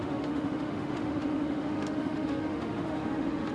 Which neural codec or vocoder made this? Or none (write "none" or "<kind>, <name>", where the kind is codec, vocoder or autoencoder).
autoencoder, DAC-VAE